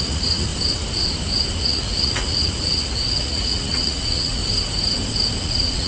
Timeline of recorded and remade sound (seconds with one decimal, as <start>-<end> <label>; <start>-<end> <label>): 0.0-0.5 remade; 0.5-1.6 recorded; 1.6-4.4 remade; 4.4-5.4 recorded; 5.4-5.9 remade